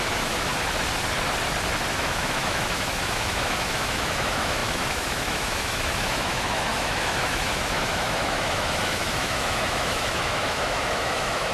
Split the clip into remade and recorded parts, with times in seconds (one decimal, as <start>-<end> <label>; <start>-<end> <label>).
0.0-0.5 remade; 0.5-1.9 recorded; 1.9-11.5 remade